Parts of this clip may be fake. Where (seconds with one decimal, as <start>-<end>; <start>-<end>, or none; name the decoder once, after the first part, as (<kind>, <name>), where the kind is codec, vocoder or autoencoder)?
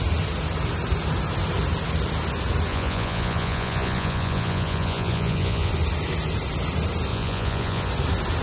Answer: 2.7-5.7 (vocoder, Vocos); 7.1-7.9